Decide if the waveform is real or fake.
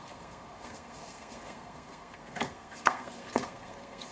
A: fake